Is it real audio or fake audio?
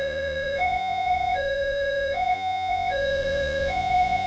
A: fake